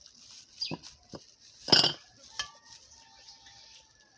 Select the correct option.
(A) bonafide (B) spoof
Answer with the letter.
A